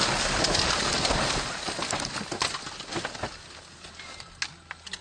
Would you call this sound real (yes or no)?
yes